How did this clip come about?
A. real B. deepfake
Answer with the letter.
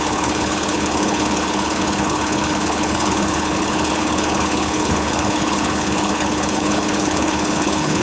B